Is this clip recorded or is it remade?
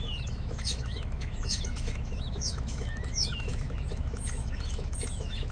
remade